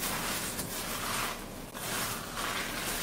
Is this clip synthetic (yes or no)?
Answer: no